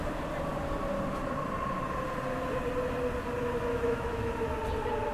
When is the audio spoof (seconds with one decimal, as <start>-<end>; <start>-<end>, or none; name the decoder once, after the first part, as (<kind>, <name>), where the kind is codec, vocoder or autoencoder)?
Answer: 3.7-4.4 (autoencoder, DAC-VAE)